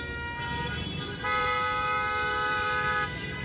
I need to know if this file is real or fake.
fake